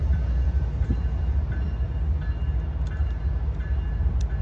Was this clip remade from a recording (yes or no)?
no